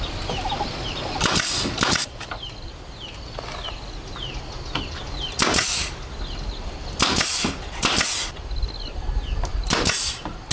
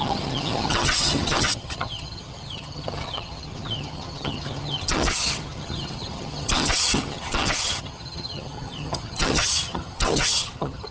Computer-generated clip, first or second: second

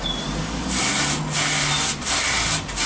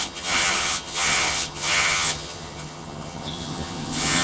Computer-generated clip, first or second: second